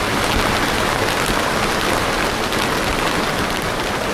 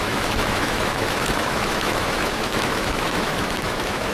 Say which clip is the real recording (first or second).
first